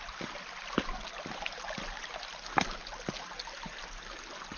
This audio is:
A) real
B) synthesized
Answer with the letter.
A